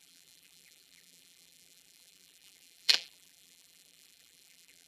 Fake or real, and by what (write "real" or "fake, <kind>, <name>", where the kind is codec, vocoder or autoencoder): fake, vocoder, BigVGAN v2